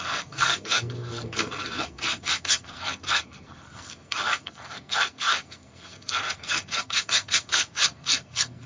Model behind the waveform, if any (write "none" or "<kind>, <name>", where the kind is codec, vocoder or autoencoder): codec, SNAC